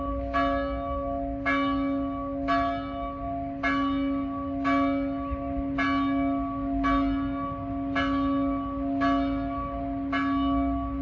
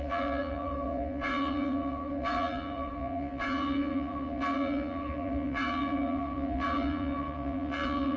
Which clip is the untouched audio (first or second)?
first